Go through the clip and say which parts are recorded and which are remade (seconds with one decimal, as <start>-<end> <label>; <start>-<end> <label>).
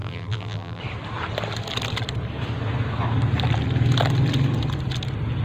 0.0-0.8 remade; 0.8-5.4 recorded